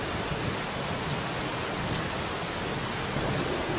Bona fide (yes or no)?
yes